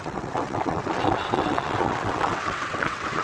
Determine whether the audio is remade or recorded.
remade